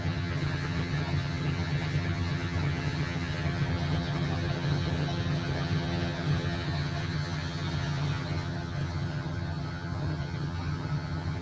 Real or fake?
fake